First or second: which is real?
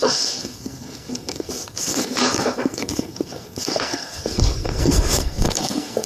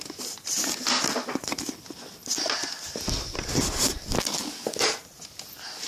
second